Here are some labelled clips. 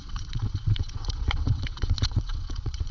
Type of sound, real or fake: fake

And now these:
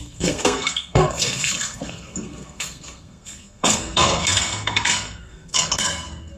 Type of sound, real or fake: fake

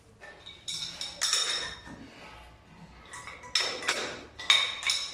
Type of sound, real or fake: real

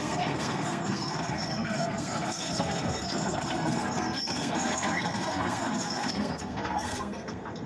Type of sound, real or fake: fake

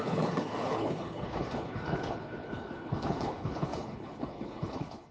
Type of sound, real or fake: fake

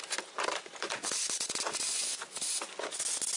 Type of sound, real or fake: real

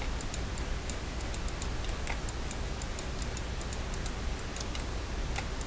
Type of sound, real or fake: real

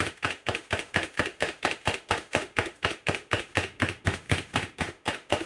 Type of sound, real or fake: fake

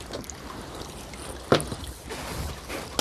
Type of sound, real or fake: real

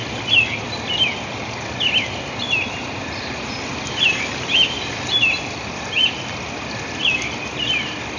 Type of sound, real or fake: real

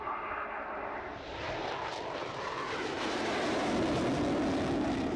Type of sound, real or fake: fake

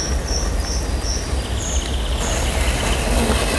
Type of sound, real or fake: real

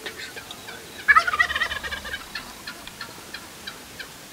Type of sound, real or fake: real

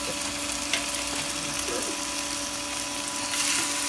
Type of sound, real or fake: real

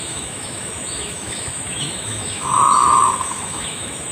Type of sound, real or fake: fake